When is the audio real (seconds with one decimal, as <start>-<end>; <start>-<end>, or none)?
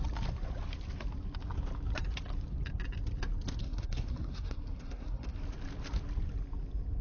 0.0-3.6; 5.4-7.0